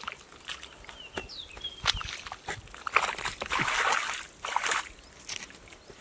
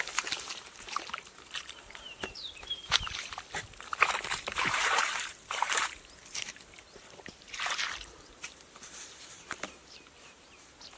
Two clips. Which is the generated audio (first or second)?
second